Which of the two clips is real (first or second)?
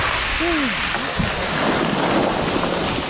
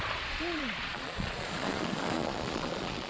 first